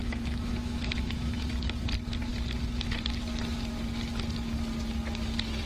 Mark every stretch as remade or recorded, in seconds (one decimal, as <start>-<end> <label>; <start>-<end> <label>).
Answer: 0.0-1.6 remade; 1.6-5.7 recorded